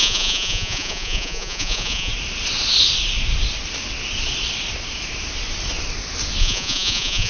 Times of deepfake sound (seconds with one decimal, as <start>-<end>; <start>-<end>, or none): 0.0-2.1; 6.4-7.3